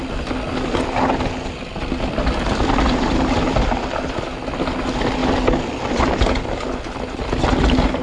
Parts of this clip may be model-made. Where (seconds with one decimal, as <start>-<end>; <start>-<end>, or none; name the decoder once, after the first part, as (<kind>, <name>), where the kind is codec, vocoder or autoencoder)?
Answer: none